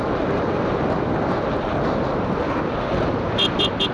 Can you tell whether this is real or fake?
real